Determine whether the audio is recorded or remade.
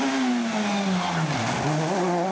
recorded